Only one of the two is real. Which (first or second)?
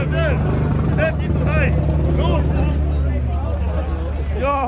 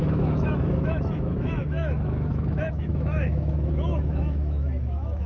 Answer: first